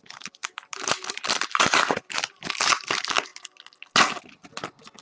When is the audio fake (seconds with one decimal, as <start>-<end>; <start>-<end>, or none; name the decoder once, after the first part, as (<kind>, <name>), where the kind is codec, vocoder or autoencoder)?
none